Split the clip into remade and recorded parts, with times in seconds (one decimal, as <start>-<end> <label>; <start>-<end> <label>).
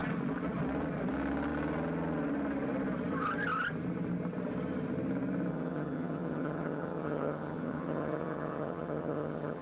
0.0-5.5 recorded; 5.5-9.6 remade